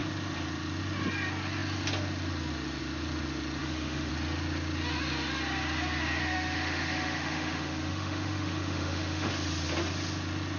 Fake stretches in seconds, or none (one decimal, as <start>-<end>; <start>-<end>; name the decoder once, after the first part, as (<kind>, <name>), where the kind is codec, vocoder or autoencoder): 3.6-4.1 (autoencoder, DAC-VAE); 6.2-9.3